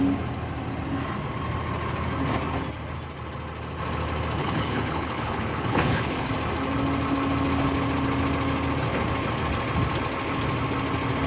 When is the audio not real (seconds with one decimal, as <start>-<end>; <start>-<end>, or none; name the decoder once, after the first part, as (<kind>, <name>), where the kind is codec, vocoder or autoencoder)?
4.4-6.3 (codec, HILCodec)